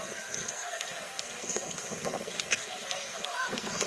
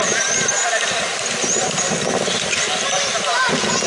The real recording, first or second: second